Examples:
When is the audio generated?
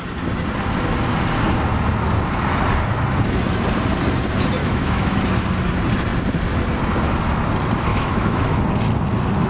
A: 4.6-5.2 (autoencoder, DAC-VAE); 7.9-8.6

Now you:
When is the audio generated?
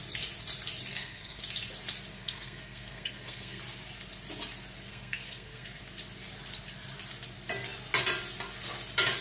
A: 0.9-1.4 (codec, SNAC); 2.1-3.6; 4.9-5.8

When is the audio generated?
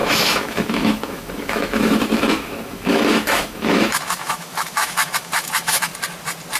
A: 0.0-5.9 (autoencoder, DAC-VAE)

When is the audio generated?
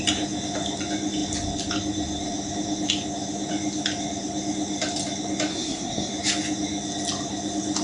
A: 5.5-6.1 (codec, SNAC)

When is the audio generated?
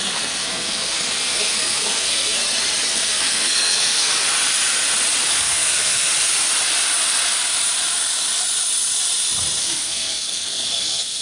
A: 0.0-2.4 (codec, SNAC); 2.9-4.1; 5.3-6.1; 9.6-11.2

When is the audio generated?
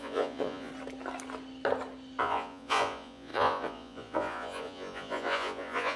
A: 0.0-0.7 (vocoder, Vocos); 2.2-6.0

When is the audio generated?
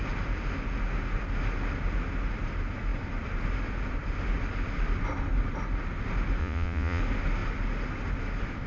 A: 6.4-7.0 (vocoder, Vocos)